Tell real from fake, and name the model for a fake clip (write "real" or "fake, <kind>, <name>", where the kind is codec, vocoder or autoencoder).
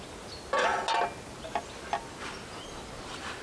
real